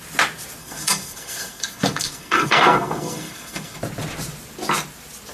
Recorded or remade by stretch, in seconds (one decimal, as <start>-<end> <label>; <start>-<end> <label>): 0.0-0.6 recorded; 0.6-3.8 remade; 3.8-5.3 recorded